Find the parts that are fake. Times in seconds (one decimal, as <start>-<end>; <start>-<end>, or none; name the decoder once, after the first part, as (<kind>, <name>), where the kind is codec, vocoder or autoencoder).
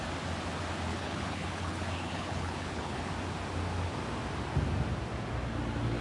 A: 0.9-3.1 (codec, HILCodec)